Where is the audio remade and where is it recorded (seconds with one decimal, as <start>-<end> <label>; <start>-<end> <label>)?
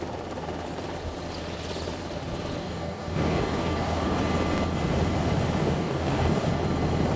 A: 0.0-2.6 recorded; 2.6-4.2 remade; 4.2-5.6 recorded; 5.6-6.5 remade; 6.5-7.2 recorded